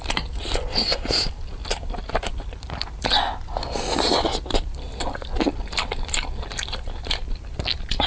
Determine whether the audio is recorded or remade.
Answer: recorded